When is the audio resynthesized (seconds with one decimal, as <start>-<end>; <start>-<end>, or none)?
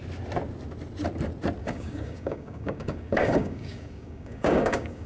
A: 1.6-5.1